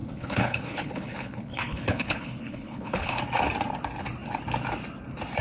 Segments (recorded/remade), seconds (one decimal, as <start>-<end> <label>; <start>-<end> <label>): 0.0-3.2 remade; 3.2-5.4 recorded